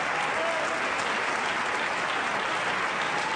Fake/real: real